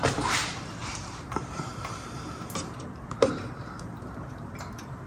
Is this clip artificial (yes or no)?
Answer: yes